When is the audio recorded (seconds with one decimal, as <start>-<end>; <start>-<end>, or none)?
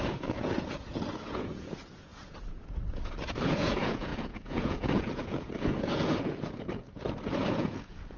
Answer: none